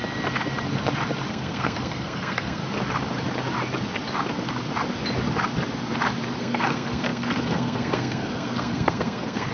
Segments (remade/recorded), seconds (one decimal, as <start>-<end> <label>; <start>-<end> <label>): 0.0-1.3 recorded; 1.3-2.6 remade; 2.6-6.4 recorded; 6.4-9.5 remade